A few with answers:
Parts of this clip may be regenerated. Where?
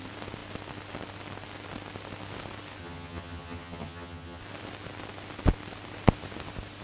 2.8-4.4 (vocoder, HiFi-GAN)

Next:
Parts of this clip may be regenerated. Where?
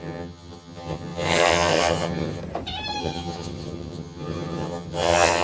0.0-2.4 (vocoder, HiFi-GAN); 3.0-5.4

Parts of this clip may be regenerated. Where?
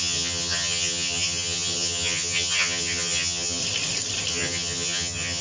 0.0-3.6 (vocoder, HiFi-GAN); 4.3-5.4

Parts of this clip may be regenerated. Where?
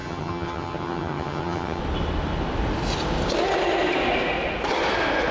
0.0-1.8 (vocoder, HiFi-GAN)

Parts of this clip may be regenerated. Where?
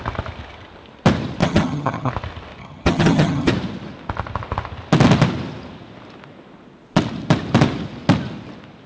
1.4-2.1 (vocoder, HiFi-GAN); 2.6-3.5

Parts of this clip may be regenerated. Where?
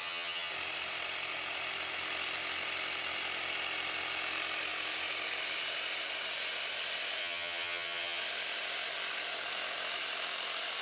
0.0-0.5 (vocoder, HiFi-GAN); 7.2-8.2